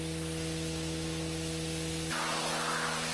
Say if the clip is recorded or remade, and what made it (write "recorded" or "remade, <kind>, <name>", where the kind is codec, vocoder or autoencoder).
recorded